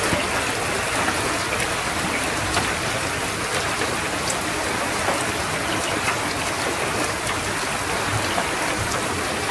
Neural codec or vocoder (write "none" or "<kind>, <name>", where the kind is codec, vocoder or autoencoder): none